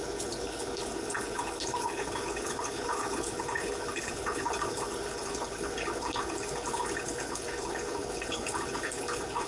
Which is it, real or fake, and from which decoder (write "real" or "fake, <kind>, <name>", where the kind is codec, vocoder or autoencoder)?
fake, codec, HILCodec